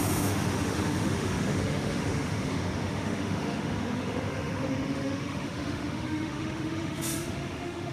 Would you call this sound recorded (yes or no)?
no